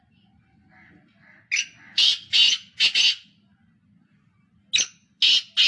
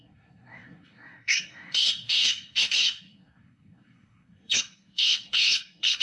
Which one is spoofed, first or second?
second